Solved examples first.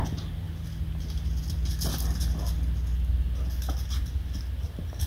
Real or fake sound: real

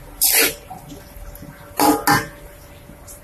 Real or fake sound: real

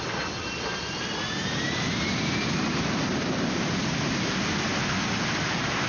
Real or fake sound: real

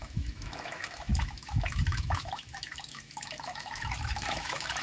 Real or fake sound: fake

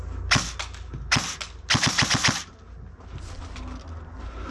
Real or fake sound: real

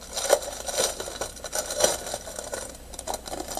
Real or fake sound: real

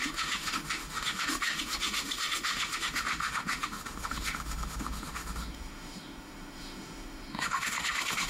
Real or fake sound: fake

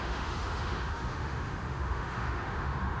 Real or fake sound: fake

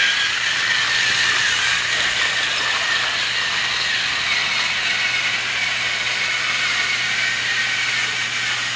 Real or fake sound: real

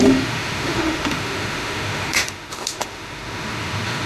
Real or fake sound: fake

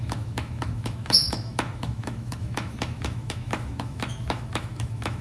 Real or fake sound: fake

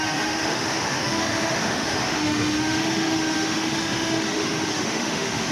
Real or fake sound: fake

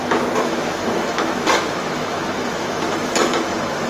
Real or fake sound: fake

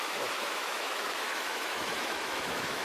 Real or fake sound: fake